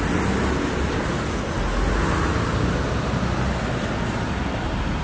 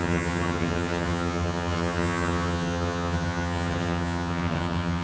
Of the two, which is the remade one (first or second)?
second